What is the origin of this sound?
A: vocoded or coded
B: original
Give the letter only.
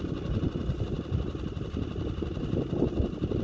B